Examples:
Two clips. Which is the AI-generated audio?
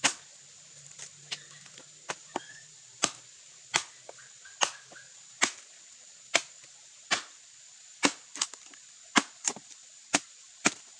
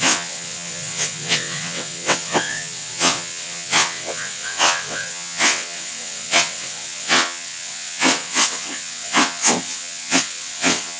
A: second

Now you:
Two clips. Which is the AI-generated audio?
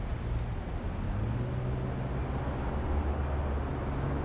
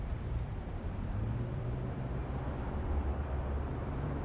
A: second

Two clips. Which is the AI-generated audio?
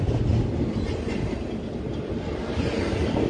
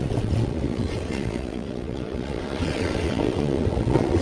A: second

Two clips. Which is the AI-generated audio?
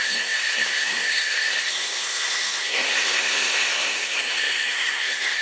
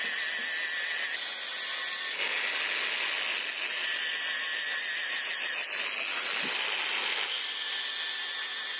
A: first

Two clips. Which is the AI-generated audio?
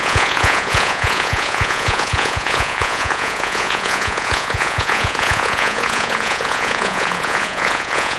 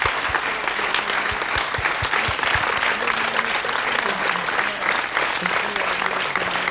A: first